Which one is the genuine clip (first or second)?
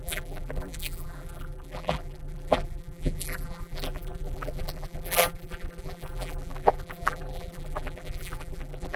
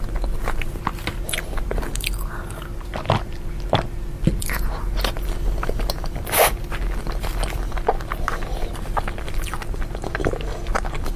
second